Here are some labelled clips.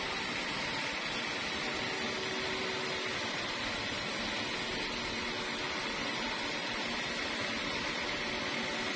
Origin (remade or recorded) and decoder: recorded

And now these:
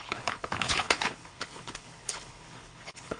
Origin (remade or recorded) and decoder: remade, codec, HILCodec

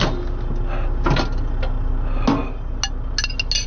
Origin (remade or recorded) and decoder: recorded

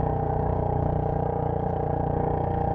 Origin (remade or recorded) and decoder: remade, codec, DAC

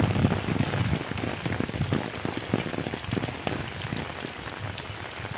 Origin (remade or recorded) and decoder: recorded